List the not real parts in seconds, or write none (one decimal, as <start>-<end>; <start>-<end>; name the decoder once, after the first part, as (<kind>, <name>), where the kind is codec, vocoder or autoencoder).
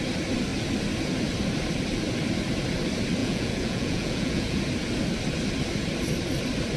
3.2-4.6 (vocoder, Vocos)